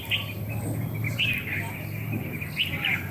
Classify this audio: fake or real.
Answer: real